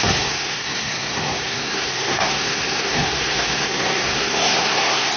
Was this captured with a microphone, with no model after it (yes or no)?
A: no